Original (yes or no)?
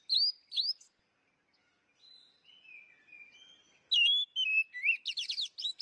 yes